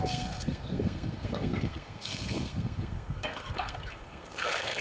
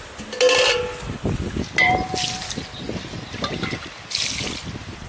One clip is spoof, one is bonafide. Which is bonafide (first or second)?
second